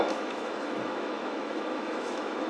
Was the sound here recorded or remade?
remade